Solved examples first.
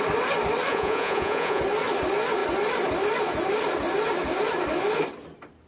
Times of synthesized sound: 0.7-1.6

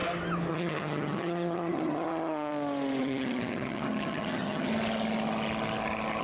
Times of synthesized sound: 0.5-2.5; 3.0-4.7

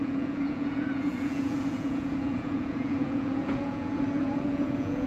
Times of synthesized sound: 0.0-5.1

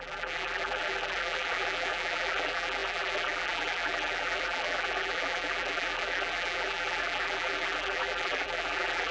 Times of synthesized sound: 0.0-9.1

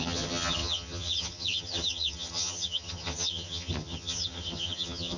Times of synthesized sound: 0.0-5.2